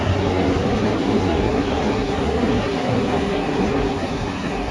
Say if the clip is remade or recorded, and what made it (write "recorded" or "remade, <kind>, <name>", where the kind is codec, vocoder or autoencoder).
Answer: remade, codec, SNAC